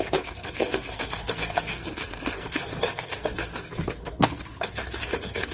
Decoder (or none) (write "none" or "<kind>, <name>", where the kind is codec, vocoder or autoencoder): codec, SNAC